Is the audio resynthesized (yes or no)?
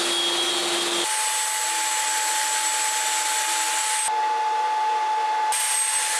no